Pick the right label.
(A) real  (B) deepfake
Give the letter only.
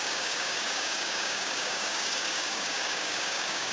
B